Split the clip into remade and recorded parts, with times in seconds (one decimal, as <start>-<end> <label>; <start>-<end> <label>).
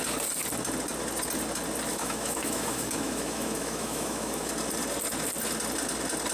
0.0-1.9 recorded; 1.9-4.5 remade; 4.5-6.3 recorded